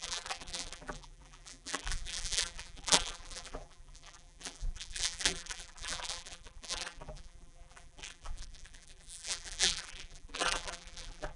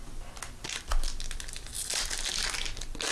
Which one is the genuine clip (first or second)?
second